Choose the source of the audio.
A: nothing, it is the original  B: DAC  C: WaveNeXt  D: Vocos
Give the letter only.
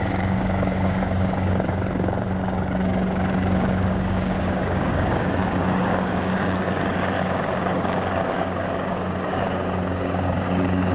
B